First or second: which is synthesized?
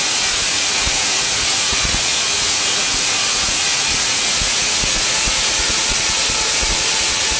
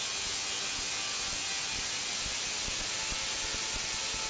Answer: first